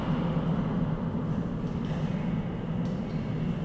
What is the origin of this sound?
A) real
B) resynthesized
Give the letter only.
A